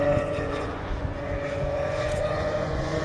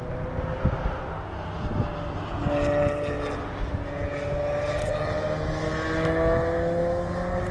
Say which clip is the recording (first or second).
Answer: second